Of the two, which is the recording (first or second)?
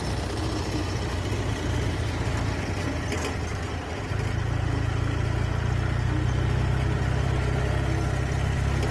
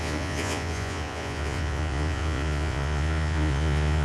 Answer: first